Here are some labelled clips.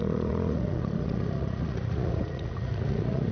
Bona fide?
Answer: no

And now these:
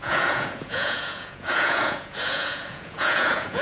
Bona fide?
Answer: no